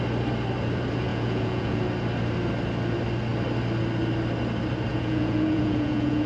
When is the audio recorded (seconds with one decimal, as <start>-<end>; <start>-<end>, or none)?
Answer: 0.0-1.1; 1.8-4.9